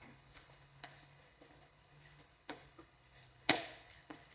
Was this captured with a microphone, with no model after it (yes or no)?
no